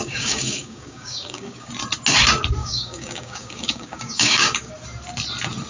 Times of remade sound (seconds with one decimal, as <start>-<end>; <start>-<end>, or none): 0.0-1.7; 2.6-4.7